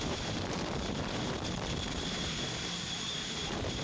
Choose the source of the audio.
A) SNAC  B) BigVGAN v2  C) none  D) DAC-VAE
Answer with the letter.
B